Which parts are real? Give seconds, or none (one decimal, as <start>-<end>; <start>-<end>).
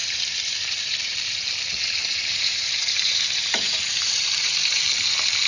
1.5-2.0; 4.9-5.5